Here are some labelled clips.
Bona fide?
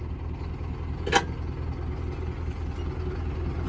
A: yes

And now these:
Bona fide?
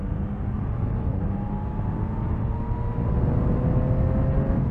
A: yes